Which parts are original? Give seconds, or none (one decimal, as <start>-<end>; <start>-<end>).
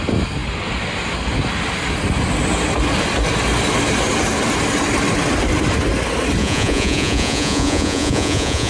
0.0-6.4